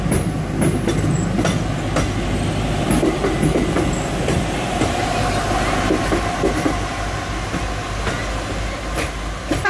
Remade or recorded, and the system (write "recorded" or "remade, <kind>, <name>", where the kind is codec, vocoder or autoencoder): recorded